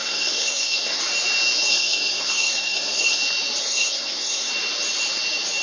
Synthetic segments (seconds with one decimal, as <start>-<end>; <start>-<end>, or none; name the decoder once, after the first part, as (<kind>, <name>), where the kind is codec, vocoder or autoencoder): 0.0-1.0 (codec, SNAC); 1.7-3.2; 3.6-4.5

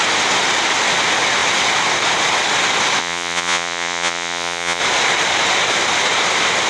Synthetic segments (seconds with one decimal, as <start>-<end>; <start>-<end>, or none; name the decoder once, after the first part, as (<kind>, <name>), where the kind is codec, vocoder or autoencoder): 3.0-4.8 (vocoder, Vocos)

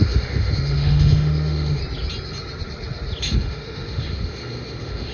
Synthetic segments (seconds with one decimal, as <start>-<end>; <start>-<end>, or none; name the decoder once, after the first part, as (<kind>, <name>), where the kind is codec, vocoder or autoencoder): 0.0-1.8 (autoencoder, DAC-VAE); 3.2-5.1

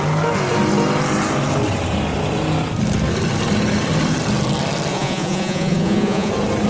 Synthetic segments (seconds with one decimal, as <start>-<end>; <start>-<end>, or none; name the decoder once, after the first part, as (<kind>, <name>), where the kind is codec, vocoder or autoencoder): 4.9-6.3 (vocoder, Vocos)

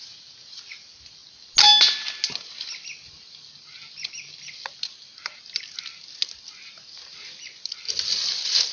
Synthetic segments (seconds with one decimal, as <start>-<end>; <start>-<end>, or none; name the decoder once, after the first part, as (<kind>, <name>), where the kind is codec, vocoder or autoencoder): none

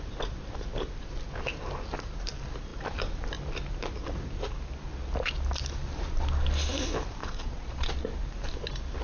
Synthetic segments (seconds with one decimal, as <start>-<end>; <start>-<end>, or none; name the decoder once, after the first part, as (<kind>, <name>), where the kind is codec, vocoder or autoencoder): 7.2-7.9 (vocoder, Vocos)

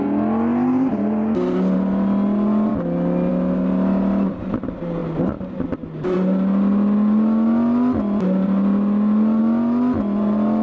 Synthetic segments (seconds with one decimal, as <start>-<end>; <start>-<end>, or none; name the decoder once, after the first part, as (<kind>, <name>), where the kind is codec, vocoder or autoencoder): none